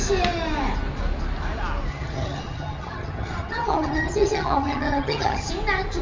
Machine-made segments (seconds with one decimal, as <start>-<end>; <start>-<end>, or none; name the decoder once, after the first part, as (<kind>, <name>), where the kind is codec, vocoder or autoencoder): 1.9-5.5 (vocoder, HiFi-GAN)